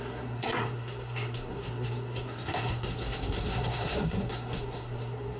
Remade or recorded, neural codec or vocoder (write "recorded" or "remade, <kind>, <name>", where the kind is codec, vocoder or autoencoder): remade, codec, SNAC